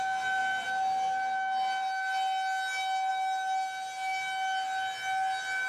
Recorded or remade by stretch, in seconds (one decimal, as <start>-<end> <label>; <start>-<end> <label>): 0.0-5.7 recorded